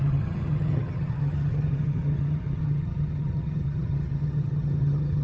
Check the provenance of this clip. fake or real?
fake